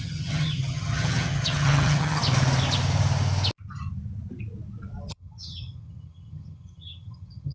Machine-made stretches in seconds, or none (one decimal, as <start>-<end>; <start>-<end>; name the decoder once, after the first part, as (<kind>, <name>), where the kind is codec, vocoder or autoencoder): 0.0-2.2 (vocoder, HiFi-GAN); 5.1-7.5